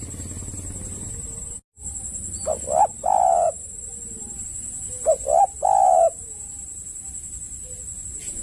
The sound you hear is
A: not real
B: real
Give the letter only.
B